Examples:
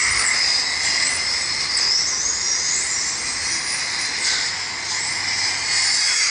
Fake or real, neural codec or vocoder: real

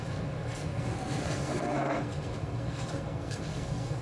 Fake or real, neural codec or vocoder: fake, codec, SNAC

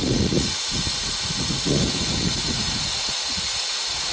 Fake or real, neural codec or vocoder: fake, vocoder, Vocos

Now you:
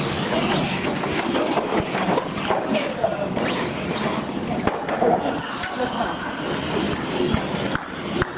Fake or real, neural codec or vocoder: real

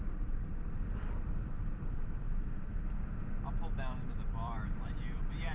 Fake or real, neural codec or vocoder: fake, vocoder, BigVGAN v2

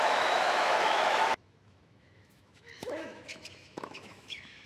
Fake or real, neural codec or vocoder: fake, autoencoder, DAC-VAE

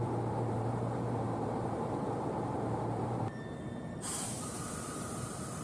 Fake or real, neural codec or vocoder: fake, vocoder, BigVGAN v2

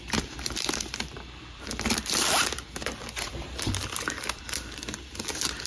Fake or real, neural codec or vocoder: fake, vocoder, BigVGAN v2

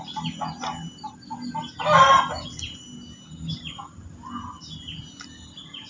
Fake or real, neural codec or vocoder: real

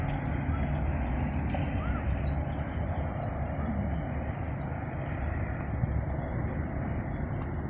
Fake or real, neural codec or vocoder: real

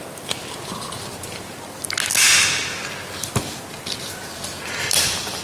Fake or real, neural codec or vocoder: real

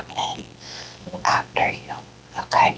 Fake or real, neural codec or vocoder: real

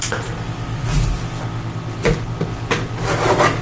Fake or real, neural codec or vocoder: real